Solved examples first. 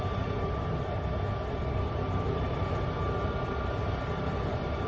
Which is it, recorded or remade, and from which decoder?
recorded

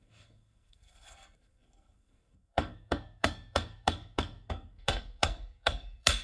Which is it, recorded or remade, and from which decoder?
remade, codec, SNAC